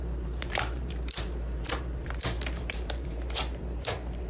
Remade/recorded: remade